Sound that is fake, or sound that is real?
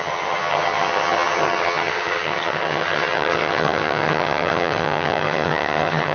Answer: fake